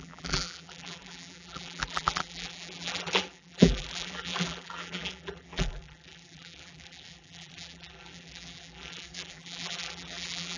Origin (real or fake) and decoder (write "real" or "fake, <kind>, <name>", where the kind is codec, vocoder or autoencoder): fake, vocoder, BigVGAN v2